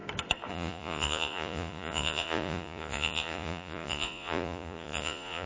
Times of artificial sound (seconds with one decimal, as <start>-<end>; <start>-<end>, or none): 0.5-5.5